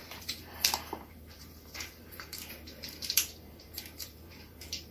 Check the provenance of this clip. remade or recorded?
remade